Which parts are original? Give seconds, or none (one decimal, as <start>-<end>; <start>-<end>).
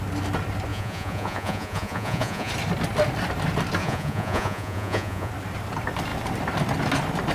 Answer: 0.0-0.7; 2.5-3.8; 5.3-7.3